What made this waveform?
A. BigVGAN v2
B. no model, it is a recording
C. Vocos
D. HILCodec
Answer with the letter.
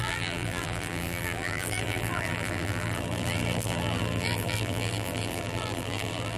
A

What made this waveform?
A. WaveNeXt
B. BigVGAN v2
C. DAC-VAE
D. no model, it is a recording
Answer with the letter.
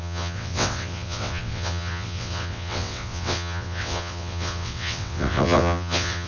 A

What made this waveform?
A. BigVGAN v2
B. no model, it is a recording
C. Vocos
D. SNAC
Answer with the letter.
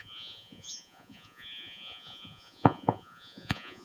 C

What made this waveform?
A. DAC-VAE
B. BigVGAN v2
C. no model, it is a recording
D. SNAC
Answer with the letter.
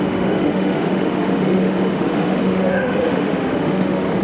A